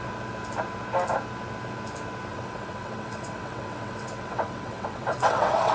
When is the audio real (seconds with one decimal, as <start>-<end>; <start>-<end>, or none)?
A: 0.0-2.3